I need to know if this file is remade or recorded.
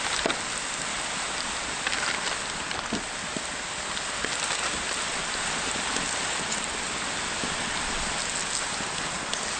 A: recorded